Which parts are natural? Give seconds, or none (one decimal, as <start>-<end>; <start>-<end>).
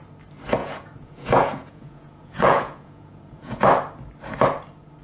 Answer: 0.0-0.6; 3.6-5.0